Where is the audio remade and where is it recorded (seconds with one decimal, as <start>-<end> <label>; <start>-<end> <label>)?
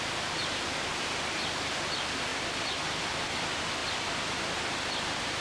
0.0-0.4 recorded; 0.4-1.2 remade; 1.2-2.3 recorded; 2.3-3.1 remade; 3.1-3.8 recorded; 3.8-5.4 remade